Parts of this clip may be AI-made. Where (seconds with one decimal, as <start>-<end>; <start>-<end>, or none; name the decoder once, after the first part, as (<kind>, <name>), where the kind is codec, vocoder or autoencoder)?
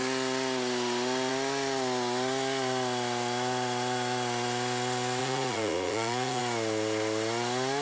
5.2-6.4 (vocoder, Vocos)